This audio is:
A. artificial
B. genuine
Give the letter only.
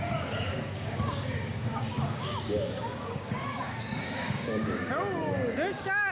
A